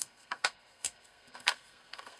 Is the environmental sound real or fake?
fake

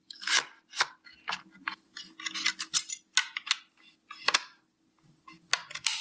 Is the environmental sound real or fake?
real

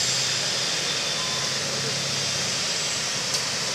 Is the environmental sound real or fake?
real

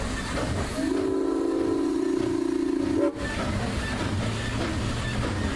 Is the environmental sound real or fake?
real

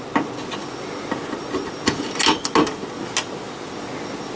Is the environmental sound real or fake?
real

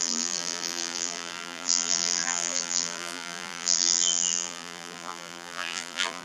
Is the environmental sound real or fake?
fake